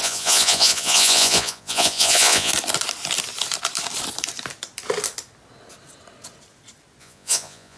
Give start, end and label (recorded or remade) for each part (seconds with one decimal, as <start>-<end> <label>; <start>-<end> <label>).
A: 0.0-2.5 remade; 2.5-7.0 recorded; 7.0-7.8 remade